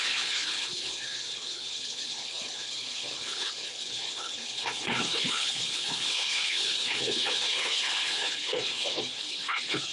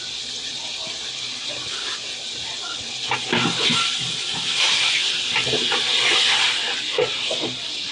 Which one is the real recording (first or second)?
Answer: second